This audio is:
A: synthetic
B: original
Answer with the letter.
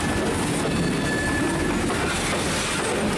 B